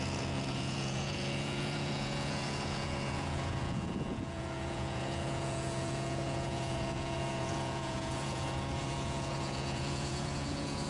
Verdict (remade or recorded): remade